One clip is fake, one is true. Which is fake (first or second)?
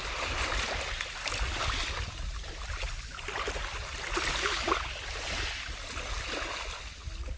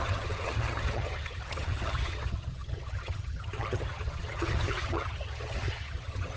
second